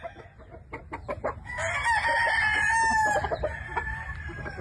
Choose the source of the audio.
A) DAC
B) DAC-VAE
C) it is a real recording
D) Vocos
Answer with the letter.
C